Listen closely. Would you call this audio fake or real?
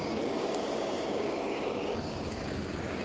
fake